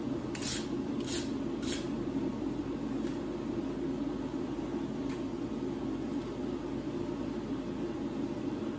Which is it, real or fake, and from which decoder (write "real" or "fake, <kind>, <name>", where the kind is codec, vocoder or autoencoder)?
real